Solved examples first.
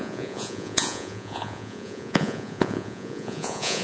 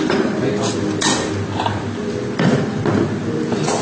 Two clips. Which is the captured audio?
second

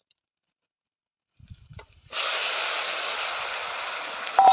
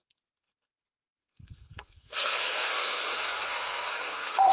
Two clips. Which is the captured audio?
first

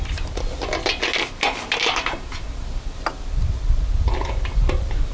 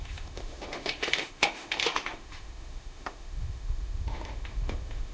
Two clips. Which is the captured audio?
first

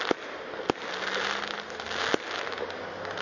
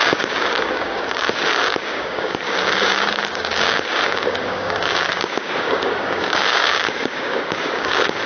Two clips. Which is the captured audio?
first